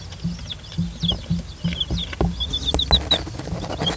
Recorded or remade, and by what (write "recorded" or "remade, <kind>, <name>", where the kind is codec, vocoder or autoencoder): recorded